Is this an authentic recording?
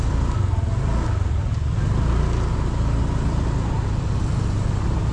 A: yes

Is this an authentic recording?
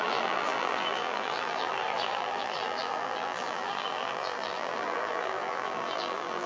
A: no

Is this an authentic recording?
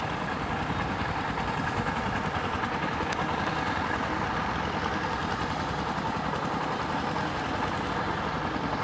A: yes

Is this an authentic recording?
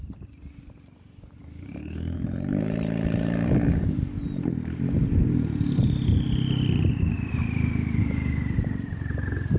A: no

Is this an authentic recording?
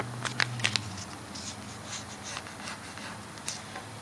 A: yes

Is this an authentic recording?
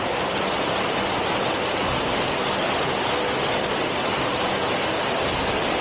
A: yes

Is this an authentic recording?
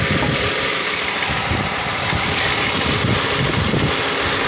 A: yes